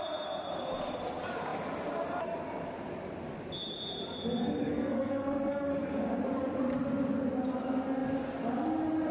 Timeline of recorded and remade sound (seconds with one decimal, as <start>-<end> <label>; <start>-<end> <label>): 0.0-4.6 recorded; 4.6-6.2 remade; 6.2-9.1 recorded

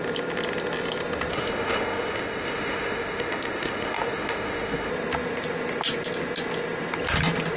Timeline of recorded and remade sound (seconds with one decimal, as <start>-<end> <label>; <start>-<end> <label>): 0.0-1.3 recorded; 1.3-4.9 remade; 4.9-7.6 recorded

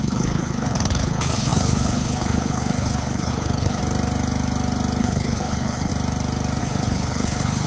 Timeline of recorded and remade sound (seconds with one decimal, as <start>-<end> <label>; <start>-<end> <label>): 0.0-3.8 remade; 3.8-5.0 recorded; 5.0-5.9 remade; 5.9-6.6 recorded; 6.6-7.7 remade

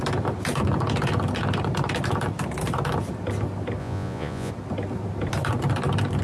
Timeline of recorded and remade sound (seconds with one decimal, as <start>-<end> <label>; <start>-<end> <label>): 0.0-3.8 recorded; 3.8-4.5 remade; 4.5-6.2 recorded

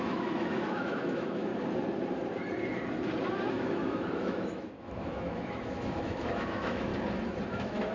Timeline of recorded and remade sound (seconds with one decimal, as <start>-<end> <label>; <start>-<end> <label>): 0.0-1.5 remade; 1.5-3.5 recorded; 3.5-6.9 remade; 6.9-7.5 recorded; 7.5-7.9 remade

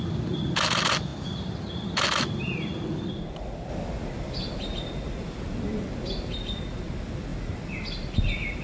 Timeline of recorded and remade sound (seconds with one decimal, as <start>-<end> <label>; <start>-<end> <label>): 0.0-8.6 recorded